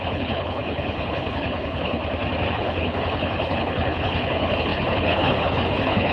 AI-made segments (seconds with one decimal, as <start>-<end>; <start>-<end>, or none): 0.0-2.0; 2.5-6.1